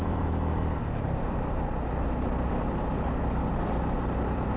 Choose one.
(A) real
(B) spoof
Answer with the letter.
B